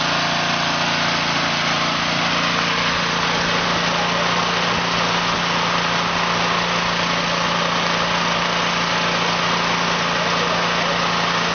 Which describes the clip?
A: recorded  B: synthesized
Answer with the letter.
A